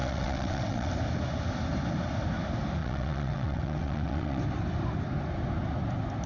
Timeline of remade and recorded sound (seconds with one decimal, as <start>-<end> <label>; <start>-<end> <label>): 0.0-0.9 remade; 0.9-2.8 recorded; 2.8-4.4 remade; 4.4-6.3 recorded